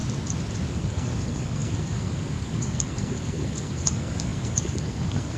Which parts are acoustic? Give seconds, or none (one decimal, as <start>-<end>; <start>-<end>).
0.0-0.7